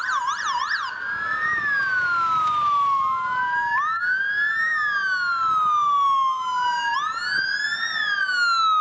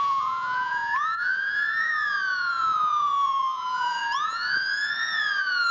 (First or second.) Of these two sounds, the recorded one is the first